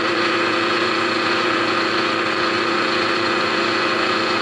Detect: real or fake fake